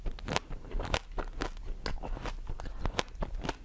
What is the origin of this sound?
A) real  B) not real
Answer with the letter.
A